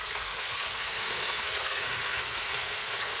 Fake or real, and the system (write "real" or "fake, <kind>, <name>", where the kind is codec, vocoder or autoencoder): fake, codec, SNAC